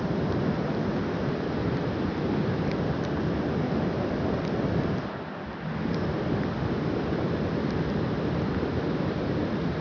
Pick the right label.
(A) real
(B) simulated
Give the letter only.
A